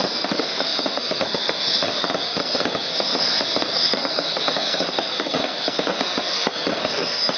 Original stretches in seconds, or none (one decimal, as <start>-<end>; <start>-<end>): none